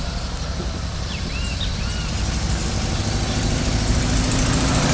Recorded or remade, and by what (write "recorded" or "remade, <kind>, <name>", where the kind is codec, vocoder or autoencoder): recorded